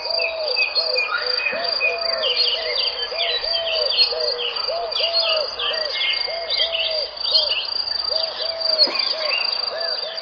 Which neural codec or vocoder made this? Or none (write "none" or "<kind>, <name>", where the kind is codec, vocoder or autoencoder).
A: none